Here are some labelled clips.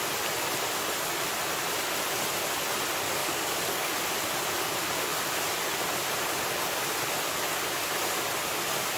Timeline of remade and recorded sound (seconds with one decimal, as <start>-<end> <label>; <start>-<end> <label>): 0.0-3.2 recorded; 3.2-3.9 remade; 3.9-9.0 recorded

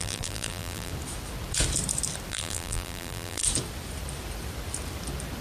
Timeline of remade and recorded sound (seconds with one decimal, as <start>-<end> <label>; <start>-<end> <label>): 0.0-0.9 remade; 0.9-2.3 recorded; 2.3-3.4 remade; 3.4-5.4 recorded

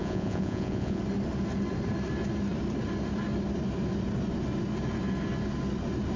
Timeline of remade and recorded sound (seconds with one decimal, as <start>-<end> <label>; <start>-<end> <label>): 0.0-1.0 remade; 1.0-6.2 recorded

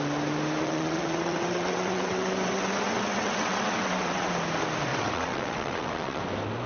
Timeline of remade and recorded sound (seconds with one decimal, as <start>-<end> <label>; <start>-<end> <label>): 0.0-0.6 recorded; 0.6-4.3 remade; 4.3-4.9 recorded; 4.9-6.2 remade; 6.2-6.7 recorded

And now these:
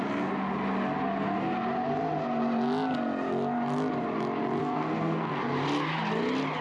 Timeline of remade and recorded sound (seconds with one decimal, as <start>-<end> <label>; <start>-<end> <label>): 0.0-4.6 recorded; 4.6-5.4 remade; 5.4-6.6 recorded

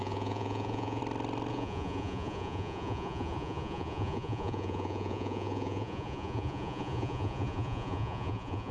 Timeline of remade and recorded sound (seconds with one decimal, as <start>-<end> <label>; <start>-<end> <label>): 0.0-1.0 remade; 1.0-1.5 recorded; 1.5-8.7 remade

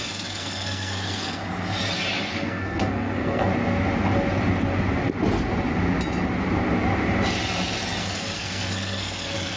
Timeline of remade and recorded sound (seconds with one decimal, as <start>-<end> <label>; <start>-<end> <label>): 0.0-1.4 remade; 1.4-2.2 recorded; 2.2-3.5 remade; 3.5-8.0 recorded; 8.0-9.6 remade